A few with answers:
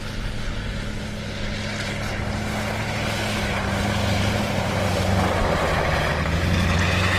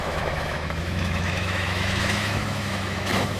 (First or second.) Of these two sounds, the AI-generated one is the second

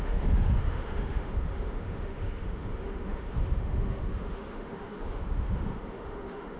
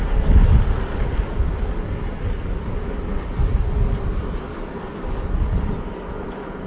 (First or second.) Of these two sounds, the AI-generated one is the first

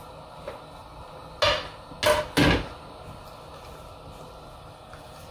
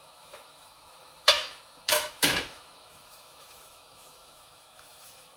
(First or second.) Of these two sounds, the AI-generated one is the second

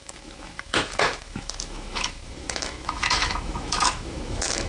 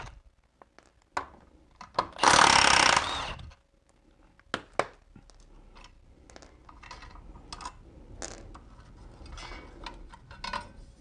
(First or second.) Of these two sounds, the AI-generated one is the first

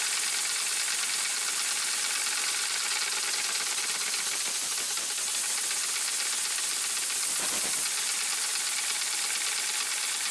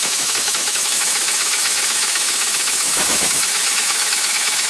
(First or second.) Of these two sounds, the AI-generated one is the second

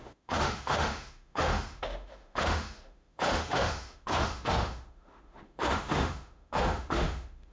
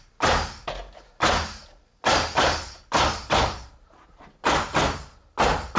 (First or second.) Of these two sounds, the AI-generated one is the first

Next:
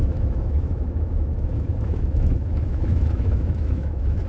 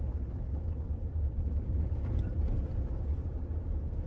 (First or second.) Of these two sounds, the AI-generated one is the first